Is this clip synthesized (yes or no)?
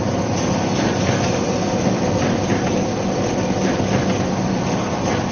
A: no